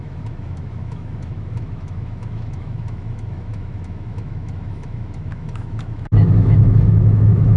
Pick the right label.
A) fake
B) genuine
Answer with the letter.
A